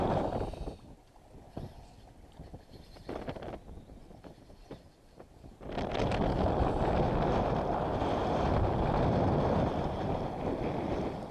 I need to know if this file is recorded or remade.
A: recorded